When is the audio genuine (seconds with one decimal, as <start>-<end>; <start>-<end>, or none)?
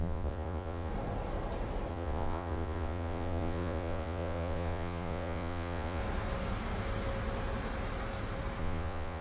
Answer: 0.9-1.9; 6.0-8.6